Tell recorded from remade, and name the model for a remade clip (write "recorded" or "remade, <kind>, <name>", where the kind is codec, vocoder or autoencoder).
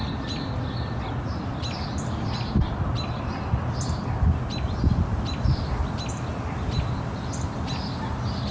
remade, vocoder, BigVGAN v2